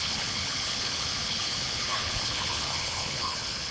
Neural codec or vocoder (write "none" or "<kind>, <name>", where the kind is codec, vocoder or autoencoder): codec, HILCodec